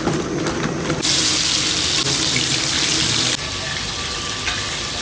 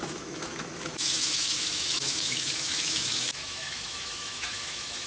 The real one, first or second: first